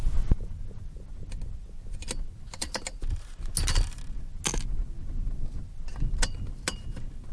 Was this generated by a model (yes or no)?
no